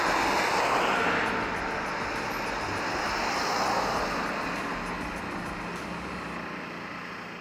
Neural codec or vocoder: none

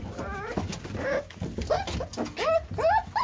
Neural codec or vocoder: none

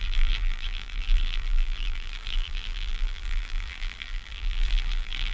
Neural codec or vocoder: vocoder, BigVGAN v2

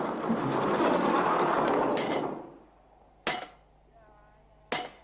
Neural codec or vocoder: none